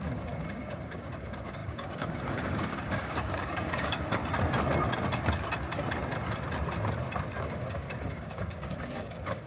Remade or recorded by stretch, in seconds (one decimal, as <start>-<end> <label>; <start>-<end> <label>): 0.0-4.2 remade; 4.2-7.4 recorded; 7.4-9.5 remade